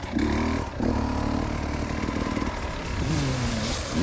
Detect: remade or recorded recorded